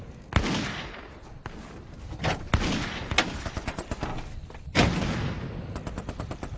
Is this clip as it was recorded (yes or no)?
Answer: yes